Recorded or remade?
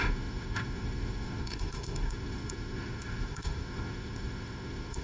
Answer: remade